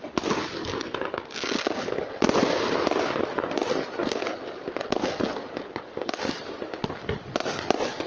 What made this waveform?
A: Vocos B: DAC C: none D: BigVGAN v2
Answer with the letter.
C